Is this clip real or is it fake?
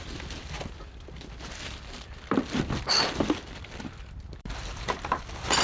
fake